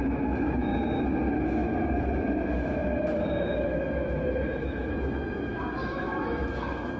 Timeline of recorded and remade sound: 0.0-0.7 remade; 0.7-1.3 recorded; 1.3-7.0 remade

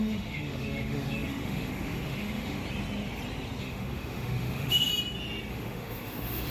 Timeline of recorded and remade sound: 0.0-2.6 remade; 2.6-3.6 recorded; 3.6-4.9 remade; 4.9-5.5 recorded; 5.5-6.5 remade

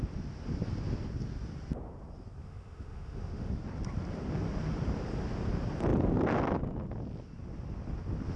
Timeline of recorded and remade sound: 0.0-2.4 recorded; 2.4-3.5 remade; 3.5-8.4 recorded

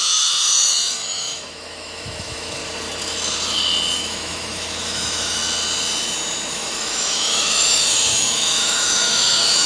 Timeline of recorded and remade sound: 0.0-2.6 remade; 2.6-4.0 recorded; 4.0-5.4 remade; 5.4-6.5 recorded; 6.5-9.7 remade

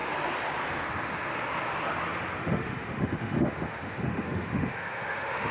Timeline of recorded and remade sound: 0.0-2.4 recorded; 2.4-5.5 remade